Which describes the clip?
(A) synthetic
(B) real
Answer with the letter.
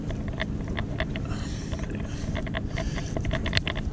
B